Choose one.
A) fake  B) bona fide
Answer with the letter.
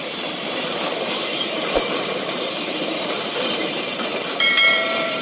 A